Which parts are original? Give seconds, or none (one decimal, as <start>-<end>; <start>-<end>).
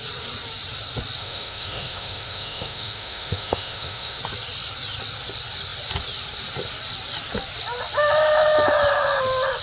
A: 0.0-1.2; 4.2-9.6